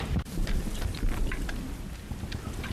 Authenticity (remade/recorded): recorded